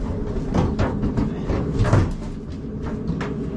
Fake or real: real